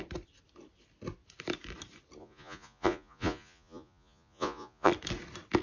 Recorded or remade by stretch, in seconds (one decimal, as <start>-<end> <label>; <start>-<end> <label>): 0.0-2.2 recorded; 2.2-4.9 remade; 4.9-5.6 recorded